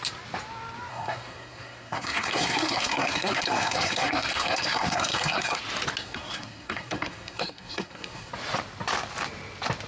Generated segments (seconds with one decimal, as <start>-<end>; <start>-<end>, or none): 0.9-5.6; 6.0-8.3